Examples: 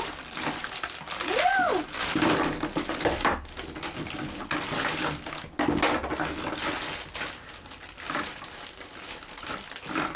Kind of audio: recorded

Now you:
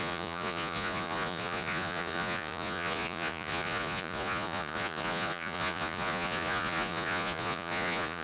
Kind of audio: remade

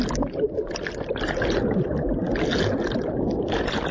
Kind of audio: recorded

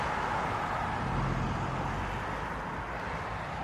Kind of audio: recorded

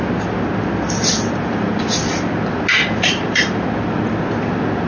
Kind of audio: recorded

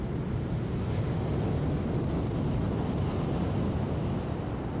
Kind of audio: recorded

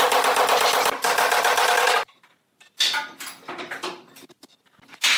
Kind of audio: recorded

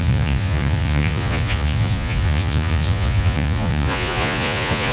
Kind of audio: remade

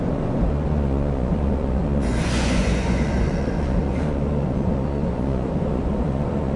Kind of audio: remade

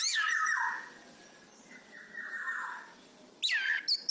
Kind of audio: recorded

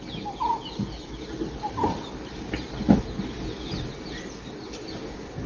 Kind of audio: recorded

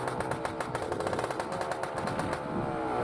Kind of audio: recorded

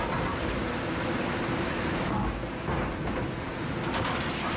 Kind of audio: recorded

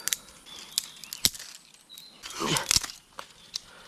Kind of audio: recorded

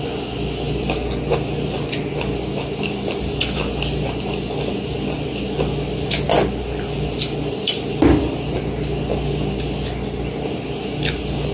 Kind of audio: recorded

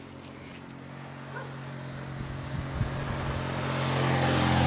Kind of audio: recorded